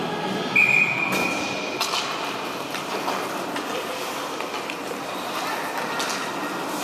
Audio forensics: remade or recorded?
recorded